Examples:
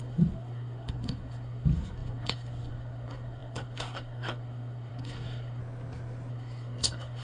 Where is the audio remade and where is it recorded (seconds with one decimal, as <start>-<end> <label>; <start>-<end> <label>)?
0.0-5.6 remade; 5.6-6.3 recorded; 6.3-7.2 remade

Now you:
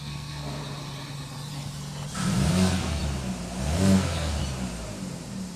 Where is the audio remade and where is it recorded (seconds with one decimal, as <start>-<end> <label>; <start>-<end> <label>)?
0.0-0.6 remade; 0.6-2.5 recorded; 2.5-3.0 remade; 3.0-3.6 recorded; 3.6-4.4 remade; 4.4-5.6 recorded

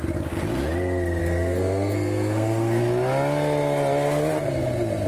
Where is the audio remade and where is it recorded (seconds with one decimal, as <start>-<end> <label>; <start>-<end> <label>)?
0.0-1.2 recorded; 1.2-2.8 remade; 2.8-5.1 recorded

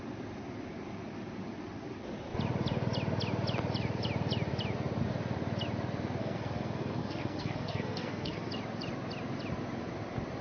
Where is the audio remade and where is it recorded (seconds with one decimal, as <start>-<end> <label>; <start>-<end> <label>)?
0.0-6.2 recorded; 6.2-8.5 remade; 8.5-10.4 recorded

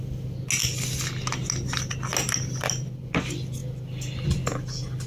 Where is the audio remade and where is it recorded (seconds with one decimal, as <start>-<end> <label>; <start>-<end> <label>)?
0.0-5.1 recorded

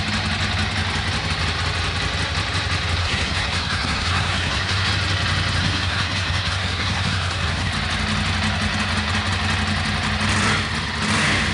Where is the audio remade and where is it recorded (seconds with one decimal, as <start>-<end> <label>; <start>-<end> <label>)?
0.0-3.0 recorded; 3.0-4.9 remade; 4.9-5.6 recorded; 5.6-7.7 remade; 7.7-11.5 recorded